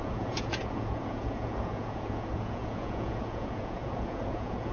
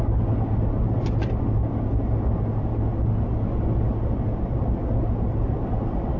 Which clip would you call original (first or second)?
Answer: second